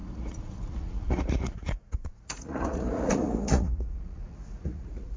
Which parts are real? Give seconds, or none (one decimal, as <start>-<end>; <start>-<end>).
none

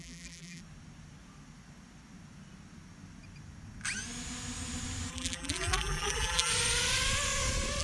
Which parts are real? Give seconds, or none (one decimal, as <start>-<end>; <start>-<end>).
0.6-5.1; 6.5-7.8

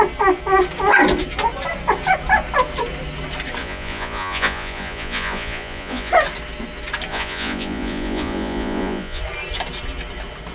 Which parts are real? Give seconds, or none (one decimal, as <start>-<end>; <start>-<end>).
0.0-3.6; 6.1-7.1; 9.2-10.5

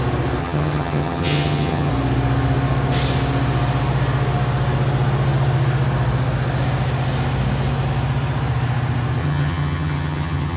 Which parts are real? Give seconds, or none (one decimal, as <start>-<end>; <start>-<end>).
0.0-0.4; 1.9-9.2

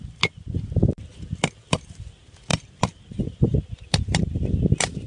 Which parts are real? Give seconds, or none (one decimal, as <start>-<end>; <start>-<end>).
none

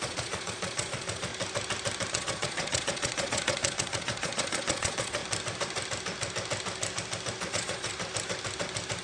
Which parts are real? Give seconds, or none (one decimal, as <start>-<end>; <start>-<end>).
1.3-2.1; 5.2-7.5; 7.9-9.0

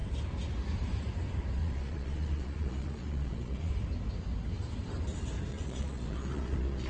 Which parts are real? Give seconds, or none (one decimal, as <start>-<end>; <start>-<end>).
0.0-1.6; 3.7-5.5

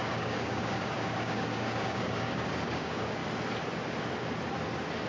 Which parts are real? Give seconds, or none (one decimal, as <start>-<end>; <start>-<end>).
3.2-5.1